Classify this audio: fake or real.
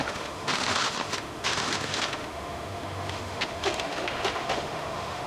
fake